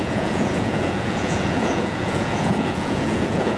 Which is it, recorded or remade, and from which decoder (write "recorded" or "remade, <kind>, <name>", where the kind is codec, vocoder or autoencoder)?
remade, vocoder, Vocos